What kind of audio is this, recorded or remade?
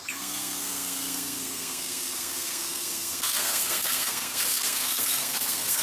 remade